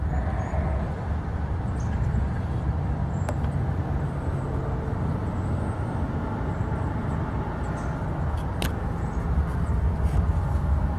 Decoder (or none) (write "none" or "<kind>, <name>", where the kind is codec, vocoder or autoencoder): none